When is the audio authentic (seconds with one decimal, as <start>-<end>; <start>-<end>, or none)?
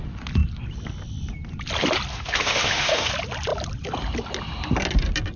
0.0-2.1; 3.1-5.4